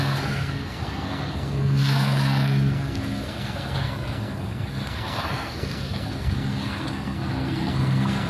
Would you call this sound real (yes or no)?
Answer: no